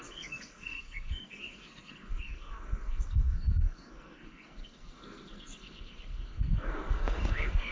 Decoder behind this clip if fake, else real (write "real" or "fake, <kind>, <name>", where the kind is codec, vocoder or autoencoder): fake, codec, SNAC